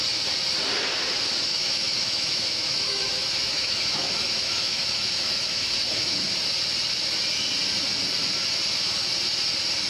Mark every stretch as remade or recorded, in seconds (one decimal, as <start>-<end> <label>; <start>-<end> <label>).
0.0-1.5 recorded; 1.5-6.3 remade; 6.3-9.9 recorded